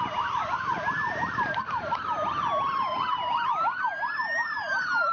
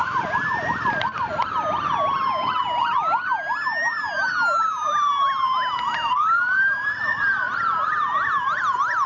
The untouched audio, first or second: second